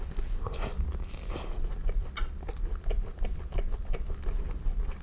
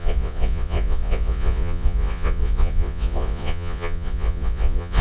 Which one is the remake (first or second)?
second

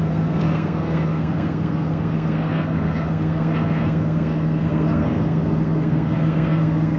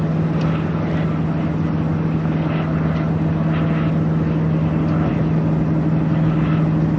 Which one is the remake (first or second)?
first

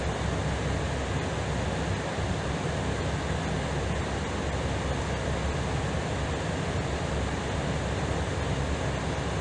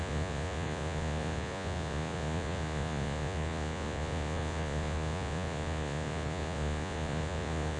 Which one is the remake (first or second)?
second